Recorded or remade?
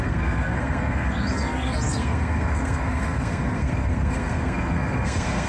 remade